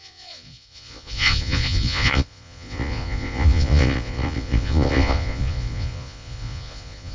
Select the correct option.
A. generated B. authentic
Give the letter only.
A